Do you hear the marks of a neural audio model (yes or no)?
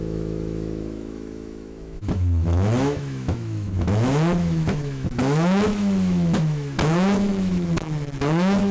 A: yes